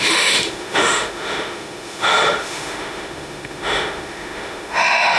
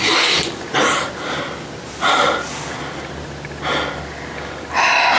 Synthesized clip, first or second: first